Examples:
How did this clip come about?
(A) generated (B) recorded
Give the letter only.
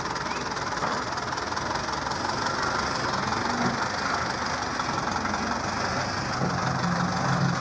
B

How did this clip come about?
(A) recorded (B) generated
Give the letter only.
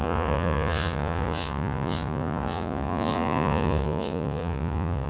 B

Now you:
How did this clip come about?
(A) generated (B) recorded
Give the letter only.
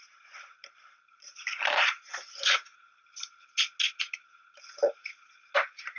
B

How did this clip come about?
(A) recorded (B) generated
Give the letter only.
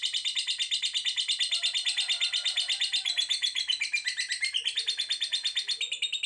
A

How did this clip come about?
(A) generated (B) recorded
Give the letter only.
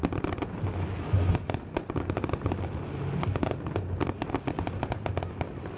B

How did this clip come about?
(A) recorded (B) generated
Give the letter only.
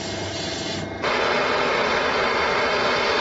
A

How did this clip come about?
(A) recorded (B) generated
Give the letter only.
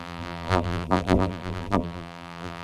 B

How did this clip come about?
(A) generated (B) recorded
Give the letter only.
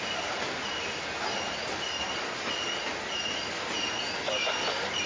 B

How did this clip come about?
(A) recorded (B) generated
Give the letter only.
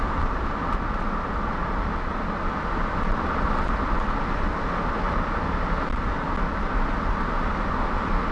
A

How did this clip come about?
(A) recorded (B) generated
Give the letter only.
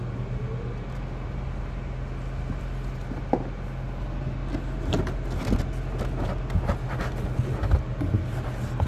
A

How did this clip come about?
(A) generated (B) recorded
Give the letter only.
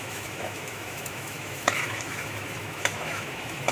A